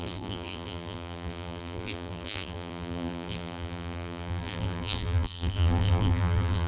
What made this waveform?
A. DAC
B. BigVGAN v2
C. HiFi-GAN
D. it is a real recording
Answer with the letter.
B